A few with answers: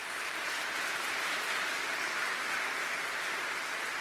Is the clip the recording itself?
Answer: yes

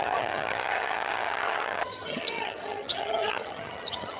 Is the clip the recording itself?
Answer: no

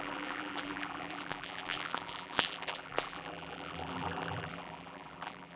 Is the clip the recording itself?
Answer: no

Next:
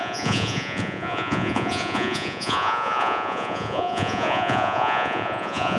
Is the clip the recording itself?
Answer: no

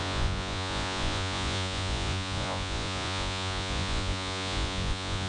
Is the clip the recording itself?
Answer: no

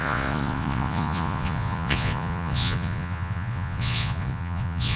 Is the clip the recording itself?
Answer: no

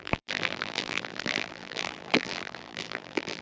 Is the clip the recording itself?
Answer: no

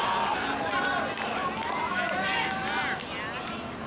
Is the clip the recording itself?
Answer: yes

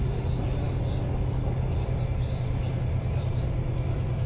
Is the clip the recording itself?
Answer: yes